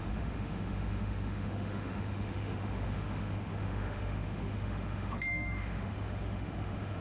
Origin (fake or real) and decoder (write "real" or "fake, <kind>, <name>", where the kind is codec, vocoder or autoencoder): fake, autoencoder, DAC-VAE